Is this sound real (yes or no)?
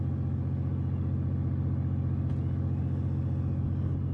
yes